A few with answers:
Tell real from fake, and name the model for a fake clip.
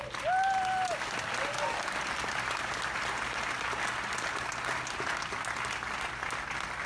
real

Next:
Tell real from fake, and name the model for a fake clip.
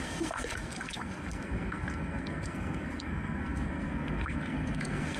fake, codec, SNAC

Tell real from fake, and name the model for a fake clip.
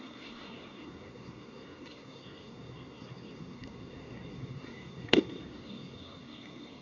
fake, codec, SNAC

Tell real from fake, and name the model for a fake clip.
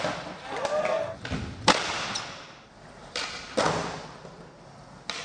real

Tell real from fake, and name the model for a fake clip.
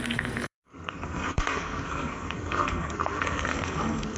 fake, codec, SNAC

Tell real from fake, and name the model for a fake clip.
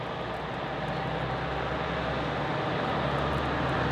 real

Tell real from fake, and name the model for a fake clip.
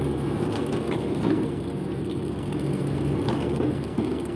fake, codec, SNAC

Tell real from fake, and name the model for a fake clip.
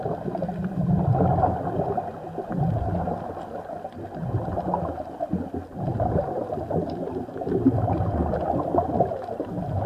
real